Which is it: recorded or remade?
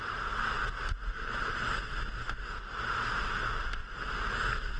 recorded